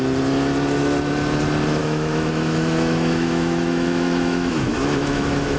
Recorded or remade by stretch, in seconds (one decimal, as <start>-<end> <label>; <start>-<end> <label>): 0.0-1.8 recorded; 1.8-5.6 remade